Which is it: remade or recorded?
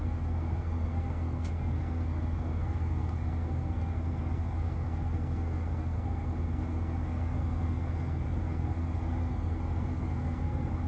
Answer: remade